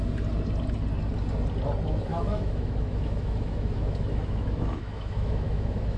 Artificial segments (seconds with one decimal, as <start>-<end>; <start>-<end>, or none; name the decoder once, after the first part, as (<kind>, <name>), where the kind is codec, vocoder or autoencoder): 2.1-6.0 (autoencoder, DAC-VAE)